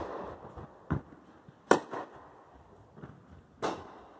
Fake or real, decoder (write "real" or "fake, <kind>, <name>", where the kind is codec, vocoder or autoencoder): real